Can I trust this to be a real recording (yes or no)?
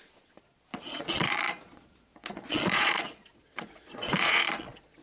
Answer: no